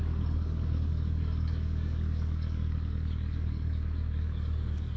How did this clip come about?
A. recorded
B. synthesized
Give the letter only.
B